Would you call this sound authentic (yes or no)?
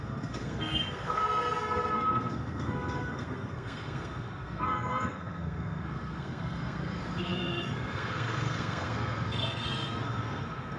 no